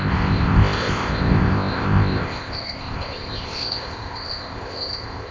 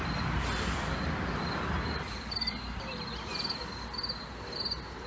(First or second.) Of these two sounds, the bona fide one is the second